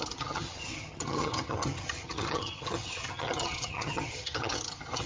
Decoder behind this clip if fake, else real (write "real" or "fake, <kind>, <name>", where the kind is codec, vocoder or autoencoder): fake, vocoder, HiFi-GAN